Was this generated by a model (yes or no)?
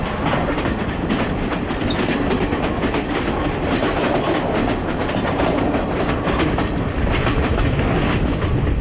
no